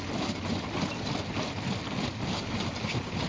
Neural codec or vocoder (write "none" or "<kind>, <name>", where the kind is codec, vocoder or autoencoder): none